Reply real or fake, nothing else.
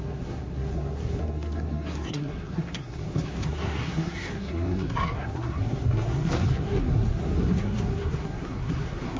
fake